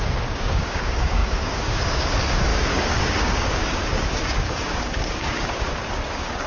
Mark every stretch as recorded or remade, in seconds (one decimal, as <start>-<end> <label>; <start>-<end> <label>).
0.0-6.5 remade

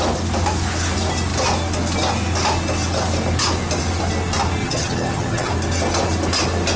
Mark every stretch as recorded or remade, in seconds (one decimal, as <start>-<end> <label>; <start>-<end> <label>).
0.0-4.6 recorded; 4.6-5.5 remade; 5.5-6.8 recorded

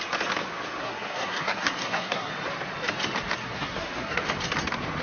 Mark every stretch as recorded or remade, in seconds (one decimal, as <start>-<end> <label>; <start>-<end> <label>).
0.0-0.8 recorded; 0.8-2.3 remade; 2.3-3.4 recorded; 3.4-4.2 remade; 4.2-5.0 recorded

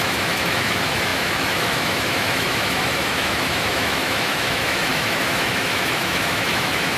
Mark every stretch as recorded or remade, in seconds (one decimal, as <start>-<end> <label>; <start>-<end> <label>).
0.0-7.0 remade

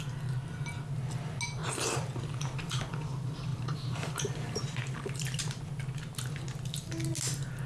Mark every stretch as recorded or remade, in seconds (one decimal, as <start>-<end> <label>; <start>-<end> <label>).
0.0-1.6 recorded; 1.6-2.2 remade; 2.2-3.5 recorded; 3.5-5.6 remade; 5.6-7.7 recorded

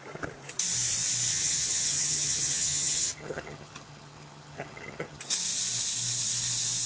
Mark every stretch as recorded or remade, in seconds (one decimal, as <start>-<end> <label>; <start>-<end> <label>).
0.0-1.3 recorded; 1.3-5.2 remade; 5.2-6.9 recorded